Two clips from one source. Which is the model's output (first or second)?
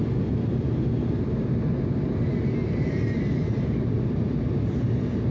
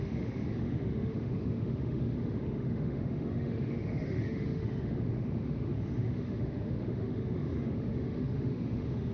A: second